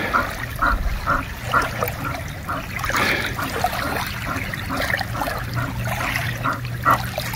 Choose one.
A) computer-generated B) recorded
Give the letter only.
B